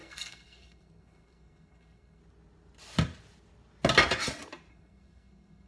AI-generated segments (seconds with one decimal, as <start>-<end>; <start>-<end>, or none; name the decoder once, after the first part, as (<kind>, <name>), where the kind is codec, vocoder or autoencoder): 0.0-2.2 (codec, SNAC); 4.7-5.7